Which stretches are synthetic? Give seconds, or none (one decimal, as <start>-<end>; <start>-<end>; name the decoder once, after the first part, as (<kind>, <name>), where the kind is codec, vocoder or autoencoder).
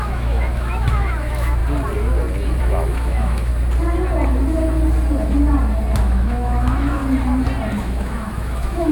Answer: 0.0-1.6 (autoencoder, DAC-VAE); 2.6-3.5; 6.0-7.0; 7.8-8.9